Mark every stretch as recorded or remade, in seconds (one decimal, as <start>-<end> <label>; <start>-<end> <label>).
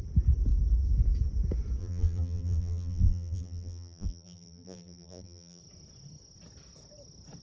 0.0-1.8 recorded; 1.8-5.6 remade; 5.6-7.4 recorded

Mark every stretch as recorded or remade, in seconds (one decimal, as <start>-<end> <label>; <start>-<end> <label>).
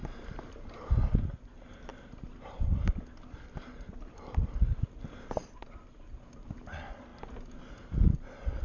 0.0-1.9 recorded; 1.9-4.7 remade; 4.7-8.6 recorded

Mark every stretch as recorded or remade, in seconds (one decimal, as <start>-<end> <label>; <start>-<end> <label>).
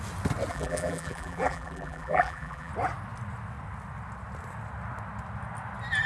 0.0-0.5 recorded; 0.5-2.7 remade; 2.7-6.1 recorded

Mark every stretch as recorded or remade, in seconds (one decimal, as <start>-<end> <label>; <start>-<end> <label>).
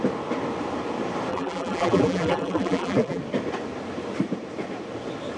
0.0-1.3 recorded; 1.3-3.2 remade; 3.2-5.4 recorded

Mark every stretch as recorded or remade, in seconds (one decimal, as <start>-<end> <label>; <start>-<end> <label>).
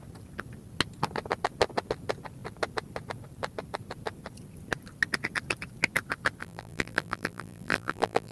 0.0-6.4 recorded; 6.4-8.3 remade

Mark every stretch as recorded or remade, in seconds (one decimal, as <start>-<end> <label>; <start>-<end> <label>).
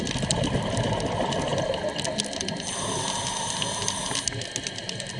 0.0-5.2 recorded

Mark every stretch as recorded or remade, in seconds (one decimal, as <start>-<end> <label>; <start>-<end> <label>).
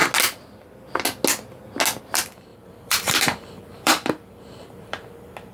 0.0-2.0 recorded; 2.0-5.5 remade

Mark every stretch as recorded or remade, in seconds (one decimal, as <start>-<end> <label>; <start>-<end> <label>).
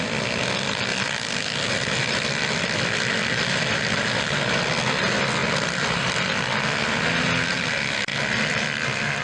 0.0-0.9 recorded; 0.9-4.8 remade; 4.8-5.4 recorded; 5.4-6.1 remade; 6.1-8.1 recorded; 8.1-9.2 remade